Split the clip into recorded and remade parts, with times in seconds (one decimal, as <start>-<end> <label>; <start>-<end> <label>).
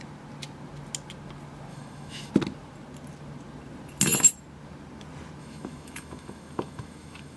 0.0-1.7 recorded; 1.7-2.3 remade; 2.3-5.4 recorded; 5.4-7.4 remade